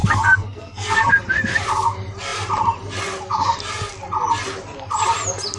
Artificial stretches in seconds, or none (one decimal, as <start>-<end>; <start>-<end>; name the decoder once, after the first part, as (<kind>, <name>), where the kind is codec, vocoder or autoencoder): 0.0-1.1 (codec, SNAC)